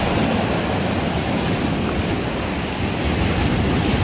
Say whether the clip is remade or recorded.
recorded